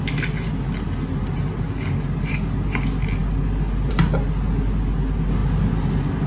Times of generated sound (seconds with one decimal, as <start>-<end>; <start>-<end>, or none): none